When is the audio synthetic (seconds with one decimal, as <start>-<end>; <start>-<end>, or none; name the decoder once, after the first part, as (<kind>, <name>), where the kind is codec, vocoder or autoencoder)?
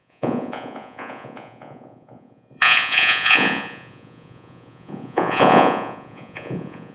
0.0-6.9 (vocoder, Vocos)